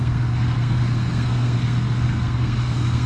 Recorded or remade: remade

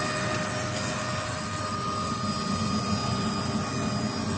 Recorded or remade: recorded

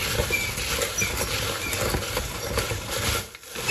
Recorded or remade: recorded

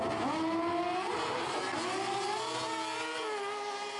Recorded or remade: recorded